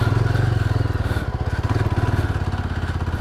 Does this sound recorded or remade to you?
recorded